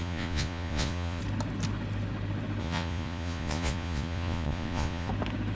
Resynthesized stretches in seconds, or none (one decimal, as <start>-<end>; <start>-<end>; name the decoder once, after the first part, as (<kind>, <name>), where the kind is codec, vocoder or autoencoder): 0.0-1.2 (vocoder, Vocos); 2.6-5.1